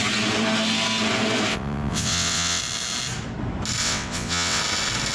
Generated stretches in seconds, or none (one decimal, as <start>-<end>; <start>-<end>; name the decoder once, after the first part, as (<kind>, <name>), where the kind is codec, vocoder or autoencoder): 1.5-2.6 (vocoder, WaveNeXt); 3.8-4.6